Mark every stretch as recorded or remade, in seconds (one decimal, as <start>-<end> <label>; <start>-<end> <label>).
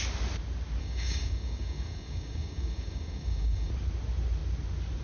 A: 0.0-0.8 recorded; 0.8-3.7 remade; 3.7-5.0 recorded